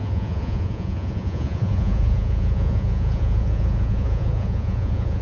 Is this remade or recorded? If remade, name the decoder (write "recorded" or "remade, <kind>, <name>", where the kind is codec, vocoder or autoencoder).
remade, vocoder, Vocos